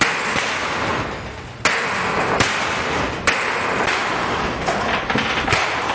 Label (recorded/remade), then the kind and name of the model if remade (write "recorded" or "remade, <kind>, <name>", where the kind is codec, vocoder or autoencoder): recorded